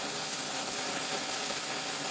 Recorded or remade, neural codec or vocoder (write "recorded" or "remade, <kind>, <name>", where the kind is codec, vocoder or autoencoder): recorded